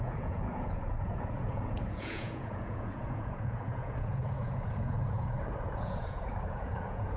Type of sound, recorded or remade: remade